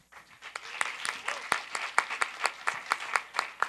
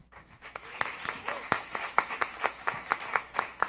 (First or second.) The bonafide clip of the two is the first